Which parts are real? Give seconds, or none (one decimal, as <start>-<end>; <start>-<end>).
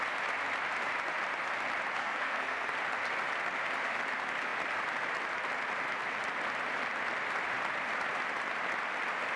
0.0-2.0; 2.7-9.4